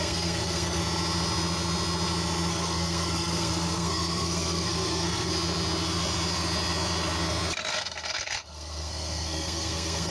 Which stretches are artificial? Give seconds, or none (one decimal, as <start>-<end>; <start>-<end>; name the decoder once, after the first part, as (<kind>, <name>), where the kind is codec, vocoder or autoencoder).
0.0-0.8 (codec, SNAC); 2.5-5.3; 7.7-10.1